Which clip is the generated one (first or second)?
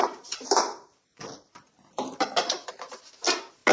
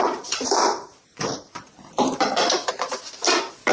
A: second